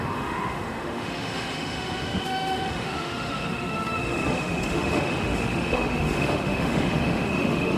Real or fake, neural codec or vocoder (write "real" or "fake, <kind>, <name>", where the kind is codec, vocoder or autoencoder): fake, autoencoder, DAC-VAE